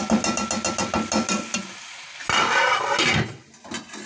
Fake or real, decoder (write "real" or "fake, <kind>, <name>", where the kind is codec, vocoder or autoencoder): real